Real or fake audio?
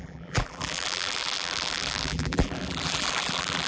fake